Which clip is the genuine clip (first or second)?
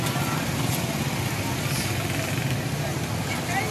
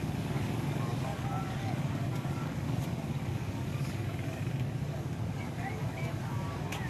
first